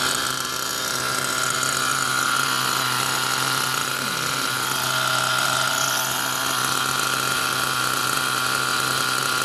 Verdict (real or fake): real